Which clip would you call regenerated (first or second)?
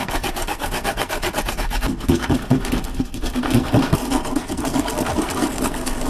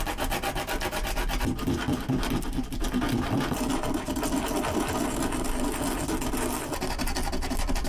first